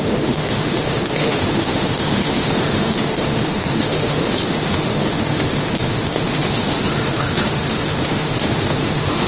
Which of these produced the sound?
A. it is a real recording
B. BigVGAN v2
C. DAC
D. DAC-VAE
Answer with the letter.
D